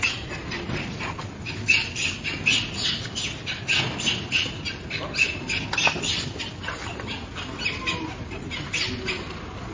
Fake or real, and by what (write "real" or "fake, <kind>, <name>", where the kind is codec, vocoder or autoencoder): real